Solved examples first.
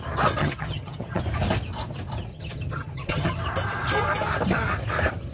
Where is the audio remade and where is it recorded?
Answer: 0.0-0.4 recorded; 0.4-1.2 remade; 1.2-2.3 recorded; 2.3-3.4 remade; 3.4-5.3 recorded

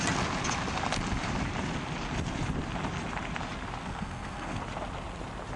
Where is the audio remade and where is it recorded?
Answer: 0.0-3.8 recorded; 3.8-4.6 remade; 4.6-5.6 recorded

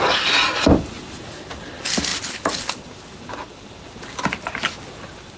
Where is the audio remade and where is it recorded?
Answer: 0.0-5.4 recorded

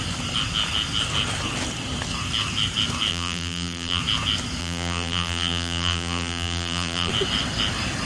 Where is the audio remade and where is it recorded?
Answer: 0.0-3.1 recorded; 3.1-4.0 remade; 4.0-4.6 recorded; 4.6-7.1 remade; 7.1-8.1 recorded

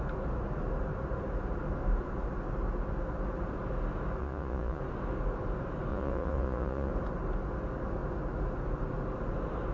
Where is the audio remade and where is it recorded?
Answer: 0.0-4.2 recorded; 4.2-4.8 remade; 4.8-5.9 recorded; 5.9-6.9 remade; 6.9-9.7 recorded

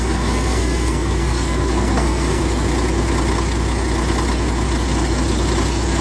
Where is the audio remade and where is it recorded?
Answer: 0.0-2.4 remade; 2.4-6.0 recorded

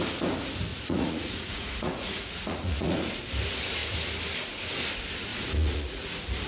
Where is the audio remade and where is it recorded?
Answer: 0.0-0.7 recorded; 0.7-3.1 remade; 3.1-5.3 recorded; 5.3-6.5 remade

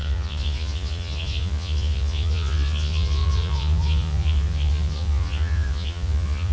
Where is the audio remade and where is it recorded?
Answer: 0.0-6.5 remade